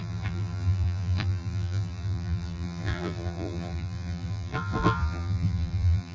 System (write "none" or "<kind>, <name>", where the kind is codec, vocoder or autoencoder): vocoder, BigVGAN v2